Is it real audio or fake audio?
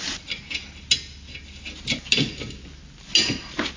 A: real